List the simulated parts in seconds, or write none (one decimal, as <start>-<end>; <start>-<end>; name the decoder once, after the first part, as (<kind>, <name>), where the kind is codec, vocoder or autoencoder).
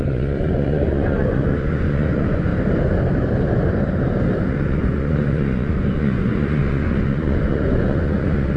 0.0-2.5 (vocoder, Vocos); 4.5-8.6